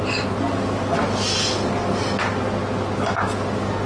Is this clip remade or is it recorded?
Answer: recorded